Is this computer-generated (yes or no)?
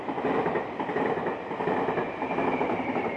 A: no